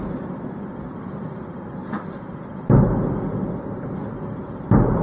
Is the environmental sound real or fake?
real